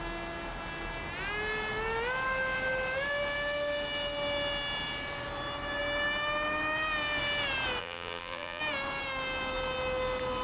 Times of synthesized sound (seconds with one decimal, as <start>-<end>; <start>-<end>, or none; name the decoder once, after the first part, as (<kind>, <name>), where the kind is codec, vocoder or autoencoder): 7.8-8.6 (vocoder, BigVGAN v2)